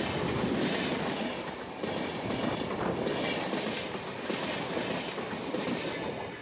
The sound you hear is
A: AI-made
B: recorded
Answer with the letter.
B